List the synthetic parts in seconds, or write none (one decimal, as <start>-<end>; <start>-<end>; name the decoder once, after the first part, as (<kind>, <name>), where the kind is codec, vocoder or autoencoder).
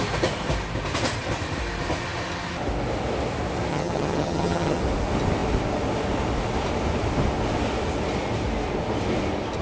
3.7-4.8 (vocoder, HiFi-GAN)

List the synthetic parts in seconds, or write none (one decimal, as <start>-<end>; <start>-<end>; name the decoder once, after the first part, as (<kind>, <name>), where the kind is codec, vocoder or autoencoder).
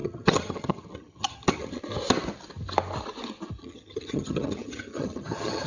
0.0-1.8 (vocoder, HiFi-GAN); 3.6-5.7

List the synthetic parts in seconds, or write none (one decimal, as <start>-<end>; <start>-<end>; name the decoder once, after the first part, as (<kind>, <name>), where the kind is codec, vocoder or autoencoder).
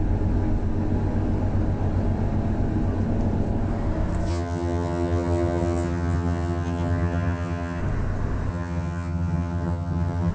4.3-7.8 (vocoder, HiFi-GAN); 8.5-10.3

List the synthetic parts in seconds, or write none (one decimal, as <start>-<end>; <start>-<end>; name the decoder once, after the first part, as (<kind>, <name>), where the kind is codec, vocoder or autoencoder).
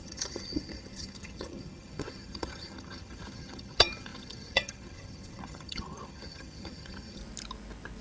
0.0-7.2 (vocoder, HiFi-GAN)